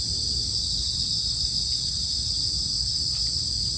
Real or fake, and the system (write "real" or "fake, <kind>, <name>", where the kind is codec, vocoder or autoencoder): real